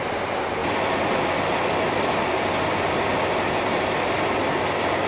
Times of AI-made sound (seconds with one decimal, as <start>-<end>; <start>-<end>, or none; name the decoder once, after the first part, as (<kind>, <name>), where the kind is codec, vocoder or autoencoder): 0.6-3.1 (vocoder, BigVGAN v2)